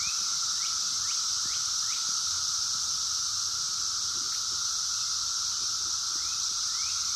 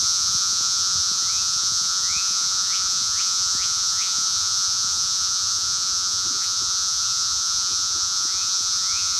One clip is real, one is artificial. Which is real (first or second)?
first